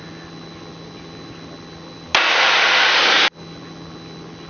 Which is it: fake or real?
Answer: real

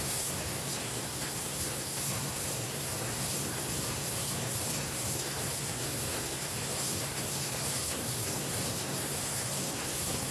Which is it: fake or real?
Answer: fake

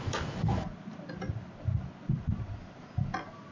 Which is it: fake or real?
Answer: real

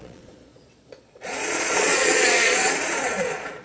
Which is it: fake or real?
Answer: fake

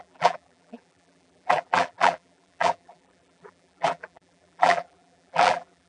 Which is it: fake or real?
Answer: fake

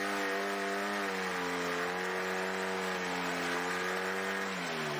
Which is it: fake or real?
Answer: real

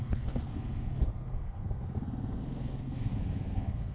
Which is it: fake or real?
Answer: fake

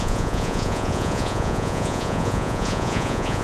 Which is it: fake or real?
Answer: fake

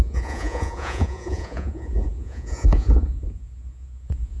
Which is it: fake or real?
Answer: fake